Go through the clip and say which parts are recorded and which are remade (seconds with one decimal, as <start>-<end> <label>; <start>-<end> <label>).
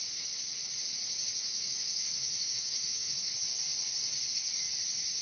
0.0-1.4 recorded; 1.4-3.3 remade; 3.3-5.2 recorded